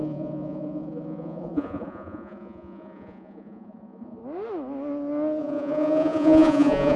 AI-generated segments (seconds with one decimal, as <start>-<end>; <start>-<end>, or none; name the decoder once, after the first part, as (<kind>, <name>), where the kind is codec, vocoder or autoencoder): 0.0-4.2 (vocoder, Vocos); 5.4-7.0